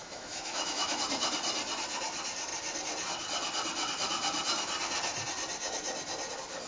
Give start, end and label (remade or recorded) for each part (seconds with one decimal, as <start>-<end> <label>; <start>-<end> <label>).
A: 0.0-1.0 remade; 1.0-6.7 recorded